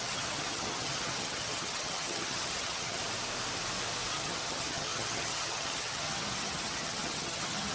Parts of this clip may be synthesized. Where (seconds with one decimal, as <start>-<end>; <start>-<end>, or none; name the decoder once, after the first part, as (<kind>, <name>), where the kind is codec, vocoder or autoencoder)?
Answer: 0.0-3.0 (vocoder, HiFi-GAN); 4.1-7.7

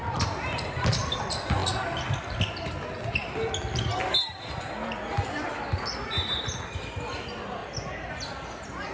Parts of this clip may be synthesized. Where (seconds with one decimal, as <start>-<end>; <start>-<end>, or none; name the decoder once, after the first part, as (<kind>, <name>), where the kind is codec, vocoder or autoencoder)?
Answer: none

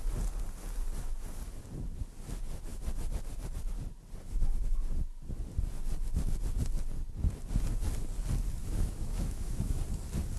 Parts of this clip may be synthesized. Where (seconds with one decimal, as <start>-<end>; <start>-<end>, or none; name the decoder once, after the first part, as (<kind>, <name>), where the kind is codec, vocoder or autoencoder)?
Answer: 8.6-9.8 (autoencoder, DAC-VAE)

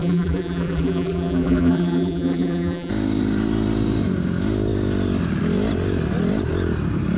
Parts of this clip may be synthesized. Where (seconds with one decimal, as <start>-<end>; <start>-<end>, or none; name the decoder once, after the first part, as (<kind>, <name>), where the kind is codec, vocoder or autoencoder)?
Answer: 0.0-2.9 (vocoder, BigVGAN v2)

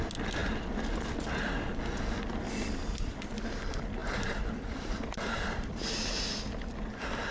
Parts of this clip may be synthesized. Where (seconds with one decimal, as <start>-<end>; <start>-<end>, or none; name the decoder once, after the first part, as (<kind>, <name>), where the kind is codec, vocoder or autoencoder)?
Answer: 4.0-5.7 (vocoder, BigVGAN v2)